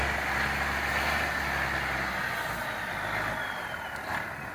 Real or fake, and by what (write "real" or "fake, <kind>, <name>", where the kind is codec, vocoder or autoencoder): real